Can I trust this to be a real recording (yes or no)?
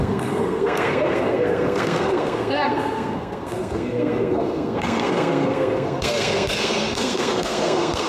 no